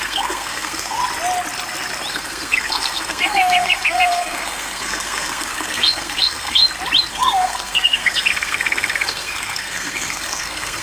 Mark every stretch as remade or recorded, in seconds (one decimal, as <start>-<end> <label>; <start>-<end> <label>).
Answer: 0.0-1.0 remade; 1.0-2.1 recorded; 2.1-6.6 remade; 6.6-7.1 recorded; 7.1-10.8 remade